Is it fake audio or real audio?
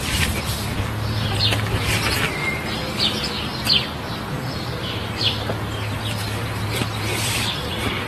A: fake